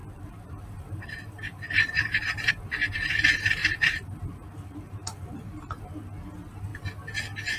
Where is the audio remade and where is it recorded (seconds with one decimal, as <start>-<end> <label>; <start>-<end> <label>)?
0.0-2.5 remade; 2.5-3.6 recorded; 3.6-5.8 remade; 5.8-7.6 recorded